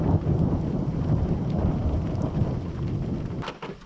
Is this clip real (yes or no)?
yes